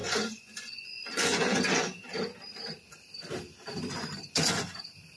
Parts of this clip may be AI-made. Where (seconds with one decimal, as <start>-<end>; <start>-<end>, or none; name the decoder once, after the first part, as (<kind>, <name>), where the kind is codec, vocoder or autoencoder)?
0.0-2.0 (vocoder, Vocos)